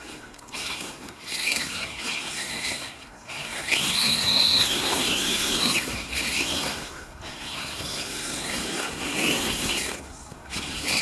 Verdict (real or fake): fake